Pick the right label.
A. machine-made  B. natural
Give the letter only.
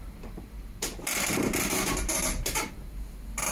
A